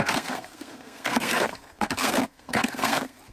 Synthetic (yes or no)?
yes